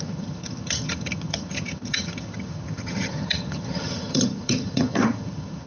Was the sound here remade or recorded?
remade